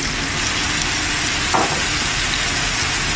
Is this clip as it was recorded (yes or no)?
yes